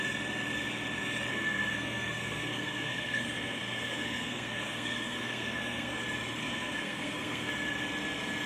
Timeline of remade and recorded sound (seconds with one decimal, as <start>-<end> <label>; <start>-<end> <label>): 0.0-1.3 recorded; 1.3-6.0 remade; 6.0-6.4 recorded; 6.4-7.5 remade; 7.5-8.5 recorded